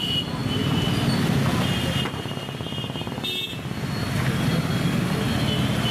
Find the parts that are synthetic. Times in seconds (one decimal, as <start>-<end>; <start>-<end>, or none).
0.4-3.1